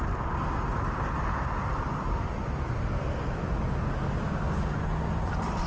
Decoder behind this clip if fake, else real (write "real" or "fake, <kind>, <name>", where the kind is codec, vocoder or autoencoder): real